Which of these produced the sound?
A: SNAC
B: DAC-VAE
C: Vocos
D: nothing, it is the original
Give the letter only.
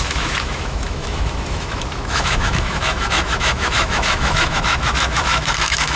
B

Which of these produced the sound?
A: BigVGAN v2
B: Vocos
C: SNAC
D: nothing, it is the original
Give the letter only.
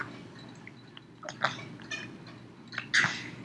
D